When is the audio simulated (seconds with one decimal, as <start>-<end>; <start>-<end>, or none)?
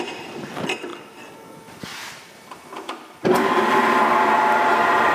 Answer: 0.0-5.1